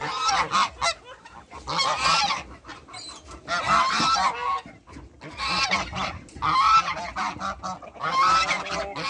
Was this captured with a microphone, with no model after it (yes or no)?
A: yes